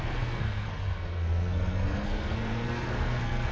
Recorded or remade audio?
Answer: remade